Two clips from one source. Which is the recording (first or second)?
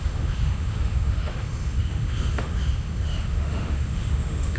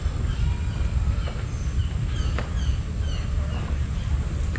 second